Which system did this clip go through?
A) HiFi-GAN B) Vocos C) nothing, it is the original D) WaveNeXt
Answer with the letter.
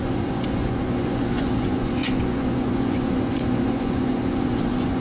B